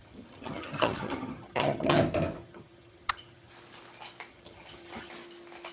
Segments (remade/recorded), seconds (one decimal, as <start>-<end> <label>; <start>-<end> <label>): 0.0-2.0 remade; 2.0-2.4 recorded; 2.4-3.5 remade; 3.5-4.3 recorded; 4.3-5.1 remade; 5.1-5.7 recorded